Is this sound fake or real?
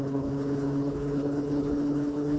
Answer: fake